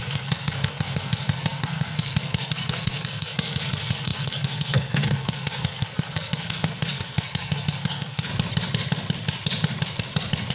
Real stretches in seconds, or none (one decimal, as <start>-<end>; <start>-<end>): 8.3-10.5